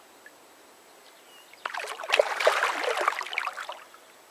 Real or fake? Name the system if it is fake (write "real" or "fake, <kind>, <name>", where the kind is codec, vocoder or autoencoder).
real